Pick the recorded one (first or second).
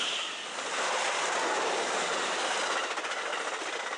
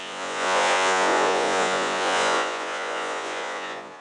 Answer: first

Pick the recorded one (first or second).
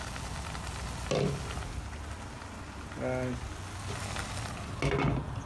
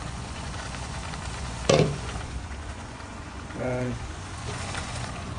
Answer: first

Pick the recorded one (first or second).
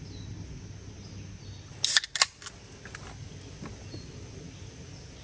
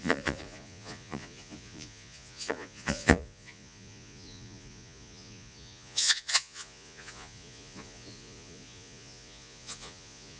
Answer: first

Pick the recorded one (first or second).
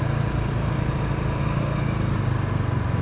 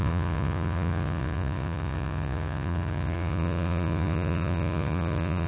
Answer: first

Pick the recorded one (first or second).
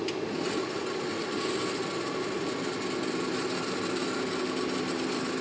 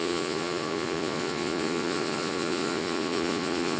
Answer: first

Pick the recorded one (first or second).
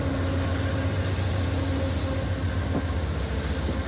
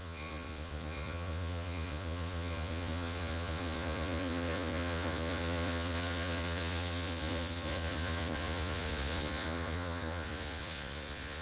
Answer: first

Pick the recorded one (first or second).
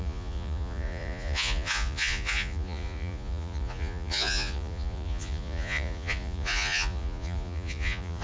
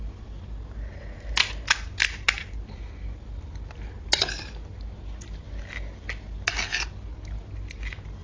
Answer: second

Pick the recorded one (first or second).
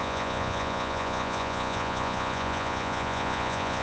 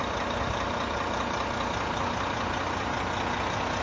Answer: second